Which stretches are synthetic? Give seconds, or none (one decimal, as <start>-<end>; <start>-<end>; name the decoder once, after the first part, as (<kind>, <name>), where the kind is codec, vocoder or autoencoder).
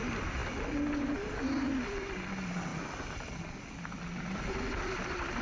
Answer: none